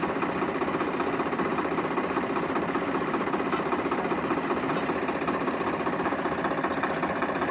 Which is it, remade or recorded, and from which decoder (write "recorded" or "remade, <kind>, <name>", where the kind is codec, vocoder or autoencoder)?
recorded